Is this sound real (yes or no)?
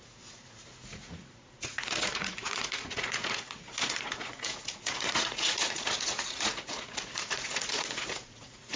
no